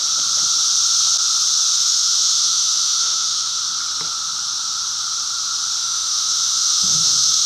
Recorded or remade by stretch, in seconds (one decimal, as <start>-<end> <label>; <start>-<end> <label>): 0.0-1.7 recorded; 1.7-3.6 remade; 3.6-5.8 recorded; 5.8-7.5 remade